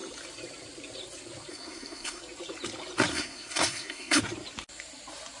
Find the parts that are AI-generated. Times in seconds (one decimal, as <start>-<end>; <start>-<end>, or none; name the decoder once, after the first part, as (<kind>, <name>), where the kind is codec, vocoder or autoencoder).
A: 1.5-2.2 (codec, SNAC); 3.1-4.2